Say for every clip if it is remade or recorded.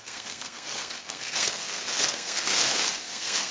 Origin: remade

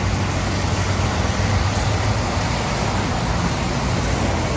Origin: recorded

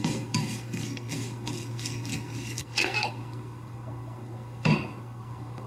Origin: remade